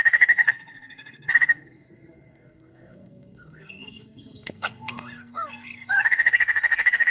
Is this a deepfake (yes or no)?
yes